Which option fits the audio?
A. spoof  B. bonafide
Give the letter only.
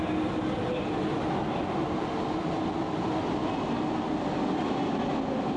B